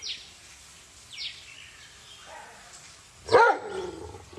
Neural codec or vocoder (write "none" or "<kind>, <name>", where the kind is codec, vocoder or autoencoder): none